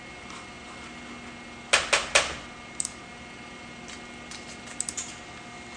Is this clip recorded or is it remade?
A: recorded